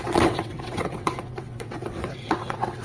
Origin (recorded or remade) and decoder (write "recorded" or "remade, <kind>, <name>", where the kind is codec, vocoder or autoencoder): remade, vocoder, WaveNeXt